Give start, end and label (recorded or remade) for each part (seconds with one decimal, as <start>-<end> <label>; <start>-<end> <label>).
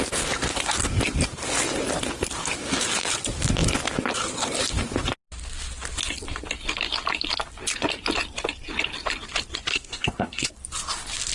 0.0-9.7 recorded; 9.7-10.5 remade; 10.5-11.3 recorded